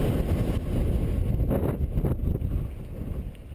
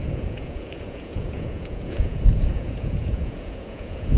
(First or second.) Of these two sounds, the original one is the first